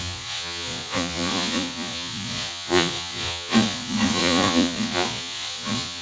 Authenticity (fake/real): fake